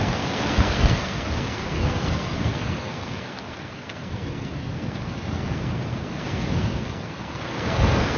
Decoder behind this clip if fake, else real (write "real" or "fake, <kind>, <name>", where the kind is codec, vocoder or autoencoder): fake, codec, SNAC